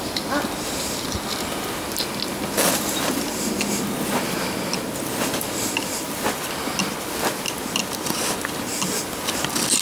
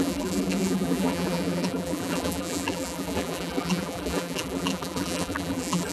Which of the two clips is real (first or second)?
first